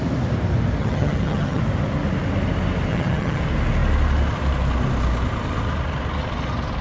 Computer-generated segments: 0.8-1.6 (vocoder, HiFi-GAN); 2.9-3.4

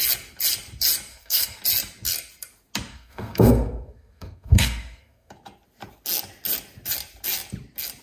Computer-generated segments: 1.1-1.6 (codec, SNAC); 2.9-5.3

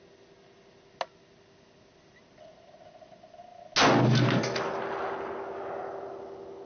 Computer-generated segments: none

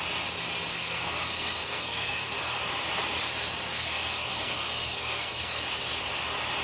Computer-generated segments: 0.7-2.6 (codec, SNAC); 3.7-5.6